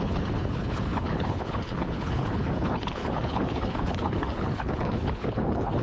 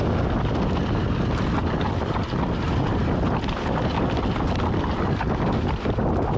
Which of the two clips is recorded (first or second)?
second